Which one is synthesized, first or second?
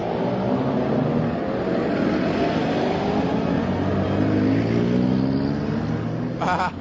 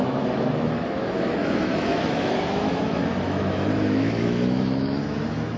second